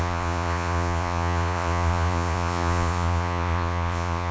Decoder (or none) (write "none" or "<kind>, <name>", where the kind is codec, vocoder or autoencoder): vocoder, Vocos